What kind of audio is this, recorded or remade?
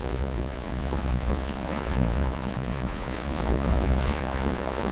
remade